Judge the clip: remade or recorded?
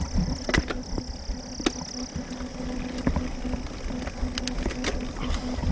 recorded